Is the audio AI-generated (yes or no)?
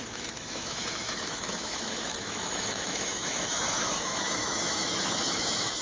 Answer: yes